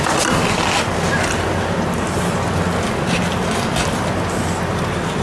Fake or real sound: real